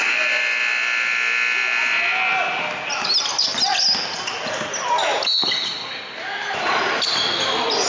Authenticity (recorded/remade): recorded